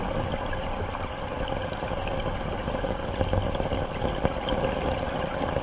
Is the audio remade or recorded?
recorded